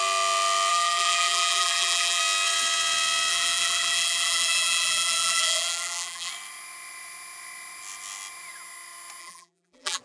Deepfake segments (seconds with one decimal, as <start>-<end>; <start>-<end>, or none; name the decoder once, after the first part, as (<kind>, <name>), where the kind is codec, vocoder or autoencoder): 0.7-2.2 (vocoder, BigVGAN v2); 3.3-6.3; 9.2-10.0